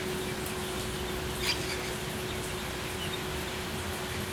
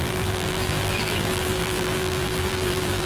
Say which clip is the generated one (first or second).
second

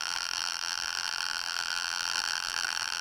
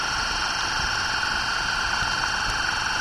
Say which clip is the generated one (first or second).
first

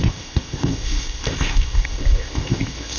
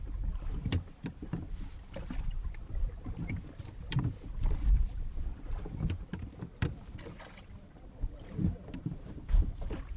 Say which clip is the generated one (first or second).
first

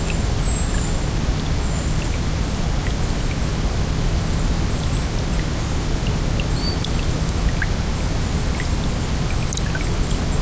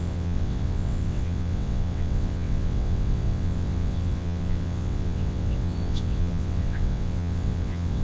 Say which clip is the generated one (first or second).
second